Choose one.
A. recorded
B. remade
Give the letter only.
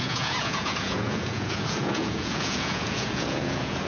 B